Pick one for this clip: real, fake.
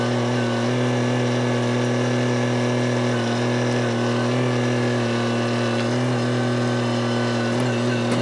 real